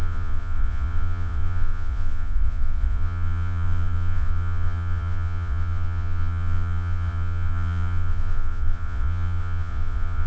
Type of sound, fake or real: fake